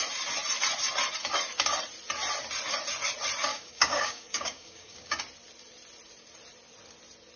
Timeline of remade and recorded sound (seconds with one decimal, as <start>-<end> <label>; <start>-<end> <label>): 0.0-3.5 recorded; 3.5-5.2 remade; 5.2-7.4 recorded